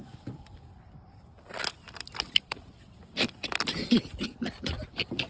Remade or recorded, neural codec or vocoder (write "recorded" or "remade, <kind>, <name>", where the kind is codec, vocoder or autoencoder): remade, vocoder, BigVGAN v2